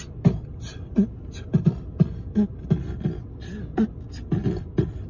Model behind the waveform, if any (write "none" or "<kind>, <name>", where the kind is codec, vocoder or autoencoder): none